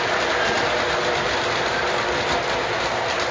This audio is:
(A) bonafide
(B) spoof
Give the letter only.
A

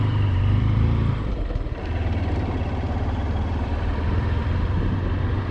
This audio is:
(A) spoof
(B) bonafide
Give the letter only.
A